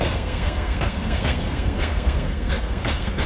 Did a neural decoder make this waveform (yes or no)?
yes